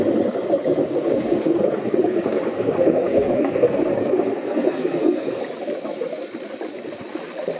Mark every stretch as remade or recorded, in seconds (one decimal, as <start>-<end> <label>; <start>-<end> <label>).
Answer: 0.0-0.8 recorded; 0.8-5.4 remade; 5.4-7.6 recorded